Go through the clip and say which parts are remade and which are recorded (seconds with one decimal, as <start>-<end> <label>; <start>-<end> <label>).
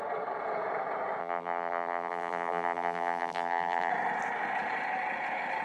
0.0-1.2 recorded; 1.2-3.9 remade; 3.9-5.6 recorded